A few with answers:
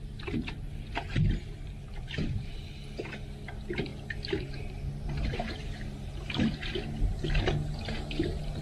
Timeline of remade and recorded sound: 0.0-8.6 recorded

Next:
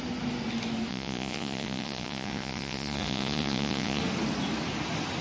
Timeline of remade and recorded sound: 0.0-0.9 recorded; 0.9-4.0 remade; 4.0-5.2 recorded

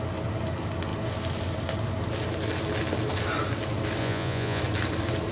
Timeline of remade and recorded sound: 0.0-4.0 recorded; 4.0-4.6 remade; 4.6-5.3 recorded

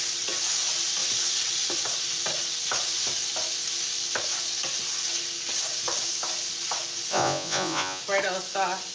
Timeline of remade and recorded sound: 0.0-7.1 recorded; 7.1-8.0 remade; 8.0-8.9 recorded